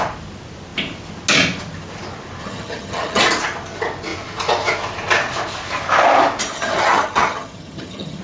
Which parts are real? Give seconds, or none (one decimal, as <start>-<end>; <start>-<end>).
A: 0.0-2.4; 3.2-6.5